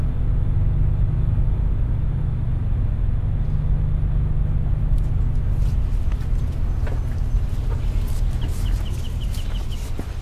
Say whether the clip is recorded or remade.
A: recorded